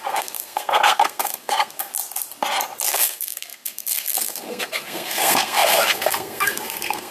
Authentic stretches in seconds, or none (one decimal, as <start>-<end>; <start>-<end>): 1.9-2.9